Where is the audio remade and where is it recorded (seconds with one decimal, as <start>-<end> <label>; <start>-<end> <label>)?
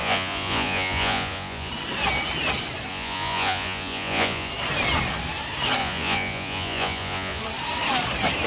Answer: 0.0-1.7 remade; 1.7-2.9 recorded; 2.9-4.5 remade; 4.5-5.8 recorded; 5.8-7.4 remade; 7.4-8.5 recorded